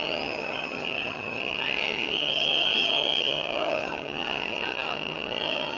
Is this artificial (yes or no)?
yes